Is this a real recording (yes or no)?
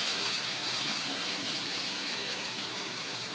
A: no